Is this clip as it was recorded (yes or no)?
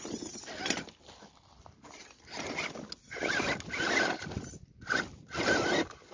yes